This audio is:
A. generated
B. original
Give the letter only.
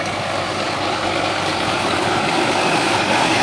A